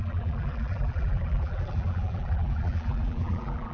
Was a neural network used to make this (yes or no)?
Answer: yes